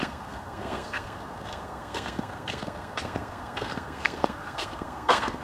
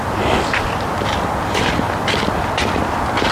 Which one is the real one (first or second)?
second